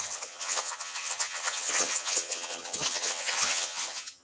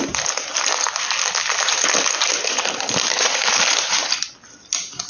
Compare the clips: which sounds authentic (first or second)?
second